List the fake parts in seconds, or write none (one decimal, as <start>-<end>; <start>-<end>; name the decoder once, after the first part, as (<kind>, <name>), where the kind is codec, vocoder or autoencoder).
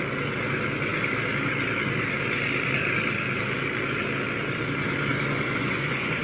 5.1-6.2 (vocoder, Vocos)